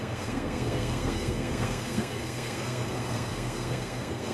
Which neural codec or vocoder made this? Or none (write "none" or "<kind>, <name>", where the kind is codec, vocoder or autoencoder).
codec, SNAC